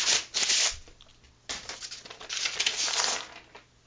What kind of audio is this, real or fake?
real